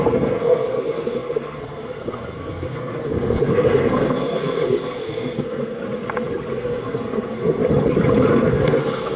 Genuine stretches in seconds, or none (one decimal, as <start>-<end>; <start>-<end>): 5.8-6.5; 7.6-8.3